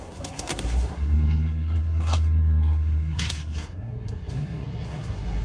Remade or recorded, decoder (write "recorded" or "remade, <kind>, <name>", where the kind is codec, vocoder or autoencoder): remade, codec, SNAC